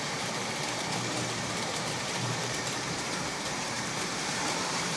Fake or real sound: fake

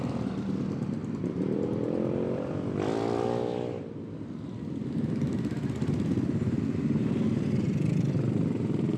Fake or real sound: fake